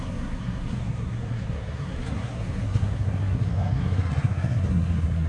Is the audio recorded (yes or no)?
no